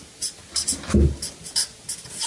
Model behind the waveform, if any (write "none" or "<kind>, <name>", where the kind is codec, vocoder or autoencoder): none